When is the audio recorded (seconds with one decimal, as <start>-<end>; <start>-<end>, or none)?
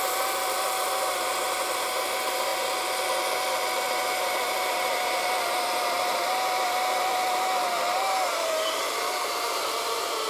2.5-4.2